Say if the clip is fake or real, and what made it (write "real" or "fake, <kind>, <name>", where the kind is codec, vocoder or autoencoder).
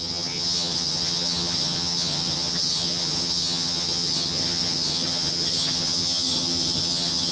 fake, vocoder, HiFi-GAN